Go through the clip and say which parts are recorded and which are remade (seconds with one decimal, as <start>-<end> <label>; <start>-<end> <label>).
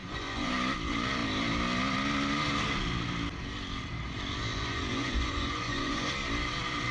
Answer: 0.0-0.5 remade; 0.5-4.5 recorded; 4.5-6.1 remade; 6.1-6.9 recorded